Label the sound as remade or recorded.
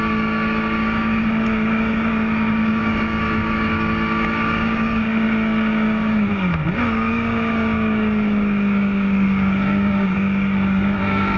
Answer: remade